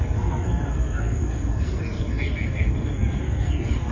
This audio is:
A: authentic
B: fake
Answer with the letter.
B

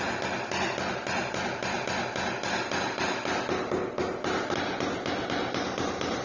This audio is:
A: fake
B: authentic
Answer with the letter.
B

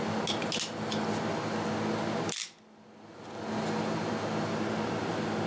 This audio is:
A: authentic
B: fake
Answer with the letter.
A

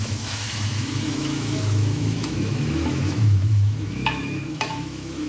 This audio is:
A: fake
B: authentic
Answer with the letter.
A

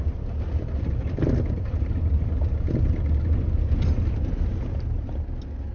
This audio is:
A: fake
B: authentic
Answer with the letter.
B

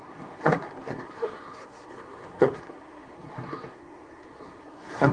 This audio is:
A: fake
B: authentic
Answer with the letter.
A